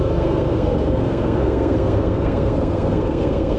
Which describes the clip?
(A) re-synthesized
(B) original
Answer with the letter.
A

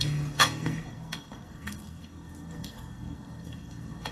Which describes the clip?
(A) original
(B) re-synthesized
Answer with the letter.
B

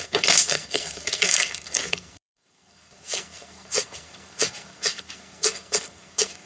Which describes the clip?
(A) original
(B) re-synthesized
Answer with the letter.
B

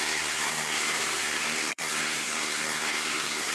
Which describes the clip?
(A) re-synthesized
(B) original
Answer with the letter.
A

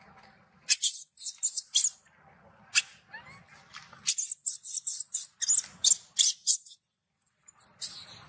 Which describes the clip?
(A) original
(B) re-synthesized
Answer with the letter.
A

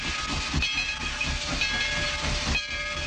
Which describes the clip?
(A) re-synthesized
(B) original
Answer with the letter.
B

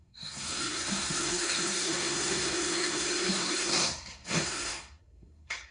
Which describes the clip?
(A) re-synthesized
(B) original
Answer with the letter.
A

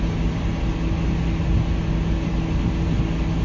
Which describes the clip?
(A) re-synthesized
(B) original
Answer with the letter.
B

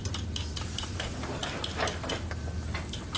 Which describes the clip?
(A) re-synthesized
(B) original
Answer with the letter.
B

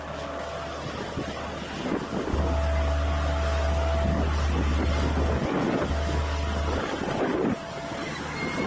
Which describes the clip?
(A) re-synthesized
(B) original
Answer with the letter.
B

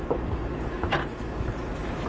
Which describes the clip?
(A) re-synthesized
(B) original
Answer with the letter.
B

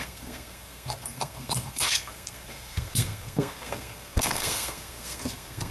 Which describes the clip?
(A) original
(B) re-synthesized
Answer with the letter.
B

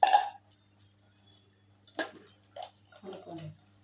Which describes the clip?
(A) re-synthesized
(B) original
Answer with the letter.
B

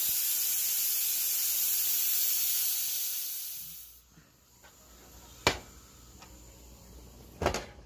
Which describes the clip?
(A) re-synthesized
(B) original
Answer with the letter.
B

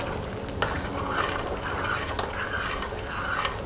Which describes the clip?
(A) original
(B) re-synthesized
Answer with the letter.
A